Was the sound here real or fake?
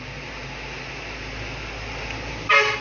real